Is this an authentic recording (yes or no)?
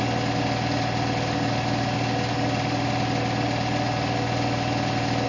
yes